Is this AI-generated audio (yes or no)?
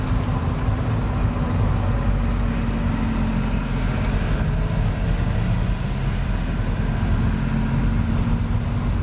no